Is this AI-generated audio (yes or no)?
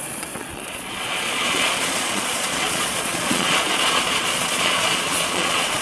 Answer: yes